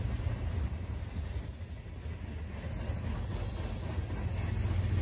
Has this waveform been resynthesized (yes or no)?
no